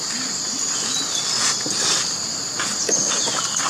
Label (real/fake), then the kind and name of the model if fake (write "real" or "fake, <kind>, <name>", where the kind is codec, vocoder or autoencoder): real